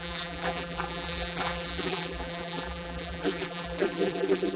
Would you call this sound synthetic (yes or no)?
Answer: yes